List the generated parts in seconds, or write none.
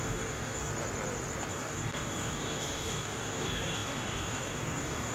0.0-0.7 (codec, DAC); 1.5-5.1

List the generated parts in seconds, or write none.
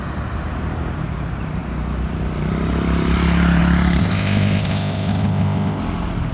4.0-5.8 (codec, ZipCodec)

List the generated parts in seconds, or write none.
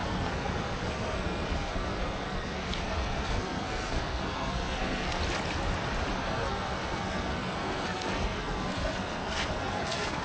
0.0-5.2 (codec, SNAC); 6.2-10.2